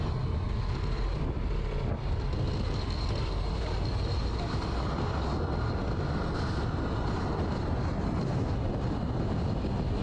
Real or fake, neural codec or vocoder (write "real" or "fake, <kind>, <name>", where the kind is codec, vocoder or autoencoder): real